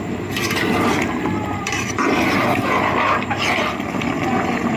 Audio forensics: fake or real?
real